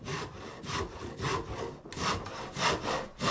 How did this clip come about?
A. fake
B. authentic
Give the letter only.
B